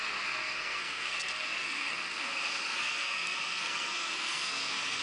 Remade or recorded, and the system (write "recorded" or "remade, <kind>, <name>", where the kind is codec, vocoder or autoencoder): remade, codec, SNAC